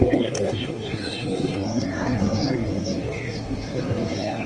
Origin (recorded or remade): remade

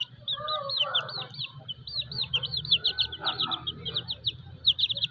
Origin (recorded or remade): remade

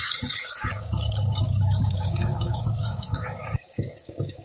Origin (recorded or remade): remade